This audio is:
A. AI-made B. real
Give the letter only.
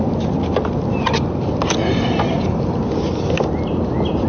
B